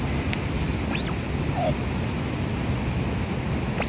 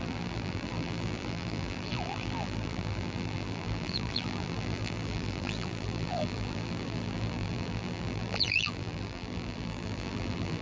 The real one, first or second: first